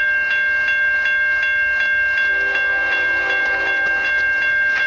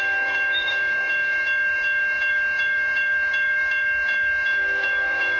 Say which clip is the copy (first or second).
second